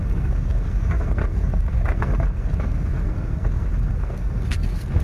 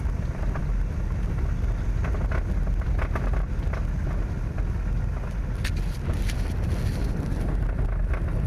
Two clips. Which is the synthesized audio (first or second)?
first